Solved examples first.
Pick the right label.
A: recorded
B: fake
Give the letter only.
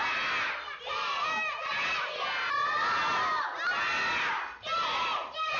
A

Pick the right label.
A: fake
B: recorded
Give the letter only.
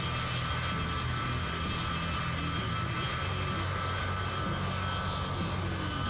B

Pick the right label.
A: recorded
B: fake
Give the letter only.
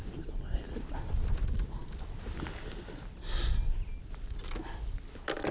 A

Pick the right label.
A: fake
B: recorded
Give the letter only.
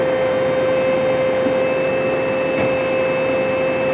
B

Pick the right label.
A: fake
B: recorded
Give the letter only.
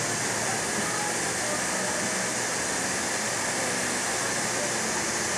B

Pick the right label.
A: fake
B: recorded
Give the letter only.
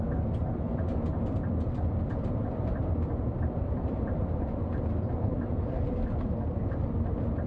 A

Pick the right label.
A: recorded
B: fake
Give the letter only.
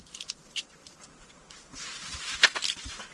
A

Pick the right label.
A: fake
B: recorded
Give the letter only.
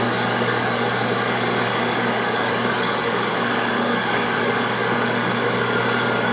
A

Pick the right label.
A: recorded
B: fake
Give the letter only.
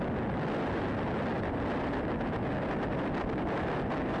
A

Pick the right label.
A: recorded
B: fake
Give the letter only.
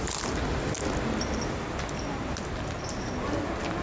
A